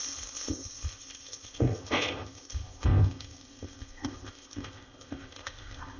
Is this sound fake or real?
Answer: fake